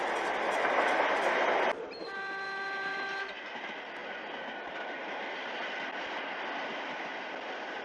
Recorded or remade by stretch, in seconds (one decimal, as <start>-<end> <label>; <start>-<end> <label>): 0.0-2.0 recorded; 2.0-3.3 remade; 3.3-7.8 recorded